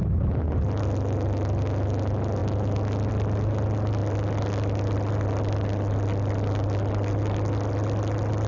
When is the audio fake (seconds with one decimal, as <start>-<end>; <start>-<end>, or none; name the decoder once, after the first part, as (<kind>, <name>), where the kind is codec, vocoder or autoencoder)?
none

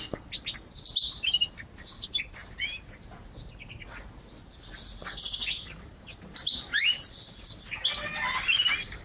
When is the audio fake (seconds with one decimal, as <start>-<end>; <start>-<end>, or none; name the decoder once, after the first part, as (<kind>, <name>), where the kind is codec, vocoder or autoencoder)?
none

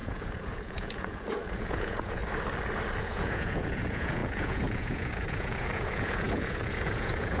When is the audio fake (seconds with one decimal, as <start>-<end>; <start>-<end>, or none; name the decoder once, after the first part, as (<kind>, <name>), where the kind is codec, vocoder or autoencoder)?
0.0-2.2 (vocoder, Vocos); 3.0-7.4